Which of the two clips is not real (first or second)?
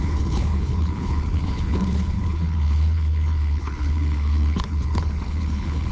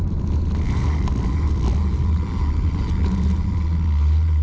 first